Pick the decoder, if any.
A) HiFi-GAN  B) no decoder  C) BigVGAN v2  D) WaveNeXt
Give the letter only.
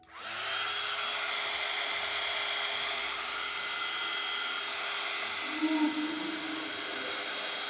B